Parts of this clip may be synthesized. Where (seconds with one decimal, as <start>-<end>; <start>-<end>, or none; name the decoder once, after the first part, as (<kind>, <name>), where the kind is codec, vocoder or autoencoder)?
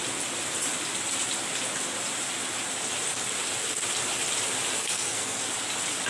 4.7-5.5 (codec, SNAC)